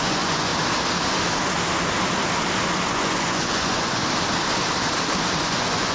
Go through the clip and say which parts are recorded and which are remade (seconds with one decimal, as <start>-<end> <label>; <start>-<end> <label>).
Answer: 0.0-0.5 remade; 0.5-2.9 recorded; 2.9-4.0 remade; 4.0-5.4 recorded; 5.4-5.9 remade

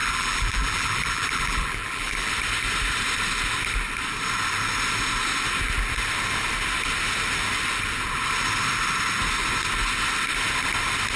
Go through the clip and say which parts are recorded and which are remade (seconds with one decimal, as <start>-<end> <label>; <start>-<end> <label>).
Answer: 0.0-2.3 remade; 2.3-11.2 recorded